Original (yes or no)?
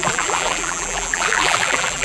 no